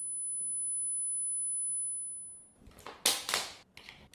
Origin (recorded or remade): recorded